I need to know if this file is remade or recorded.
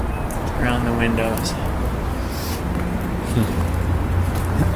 recorded